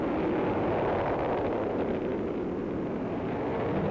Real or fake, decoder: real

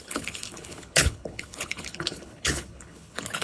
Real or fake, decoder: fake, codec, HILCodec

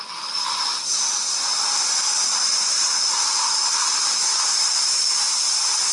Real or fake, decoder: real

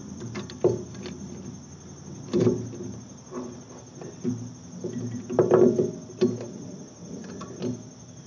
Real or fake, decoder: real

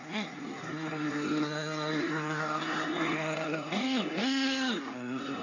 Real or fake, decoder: fake, codec, SNAC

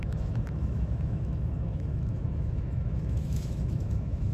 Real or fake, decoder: fake, autoencoder, DAC-VAE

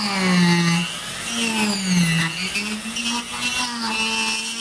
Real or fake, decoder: real